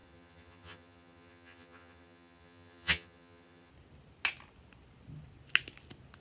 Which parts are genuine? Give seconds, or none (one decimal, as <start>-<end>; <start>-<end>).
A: 3.7-6.2